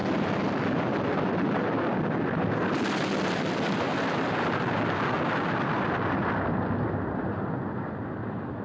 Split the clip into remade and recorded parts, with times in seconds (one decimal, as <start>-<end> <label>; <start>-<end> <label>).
0.0-8.6 recorded